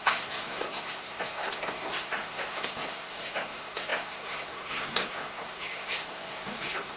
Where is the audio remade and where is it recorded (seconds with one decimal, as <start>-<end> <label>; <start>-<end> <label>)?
0.0-7.0 remade